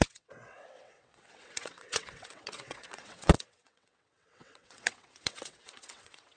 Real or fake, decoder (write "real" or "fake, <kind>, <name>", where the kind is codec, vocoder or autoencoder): fake, vocoder, WaveNeXt